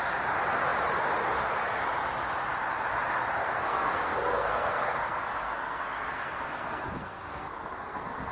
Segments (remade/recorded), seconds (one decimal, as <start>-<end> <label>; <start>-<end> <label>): 0.0-3.4 recorded; 3.4-8.3 remade